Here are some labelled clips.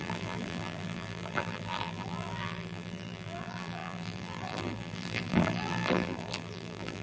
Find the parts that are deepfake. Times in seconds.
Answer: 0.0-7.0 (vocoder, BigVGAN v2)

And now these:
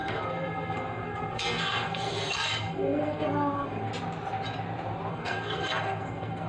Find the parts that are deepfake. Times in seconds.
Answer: 0.0-3.9 (codec, SNAC); 5.1-6.5

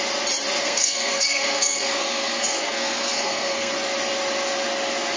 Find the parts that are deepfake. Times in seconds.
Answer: 0.6-3.7 (codec, SNAC)

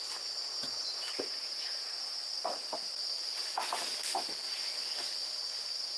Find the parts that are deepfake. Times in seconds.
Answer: 0.4-2.2 (vocoder, Vocos)

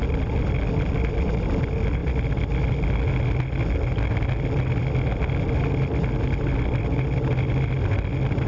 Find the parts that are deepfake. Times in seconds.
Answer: none

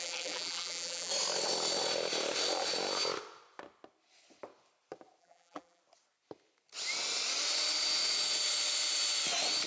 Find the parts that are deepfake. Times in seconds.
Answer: 0.0-1.1 (vocoder, BigVGAN v2); 5.2-5.8

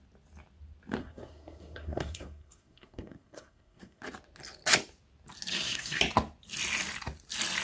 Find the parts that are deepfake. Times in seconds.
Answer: 1.0-4.0 (codec, SNAC); 5.5-6.0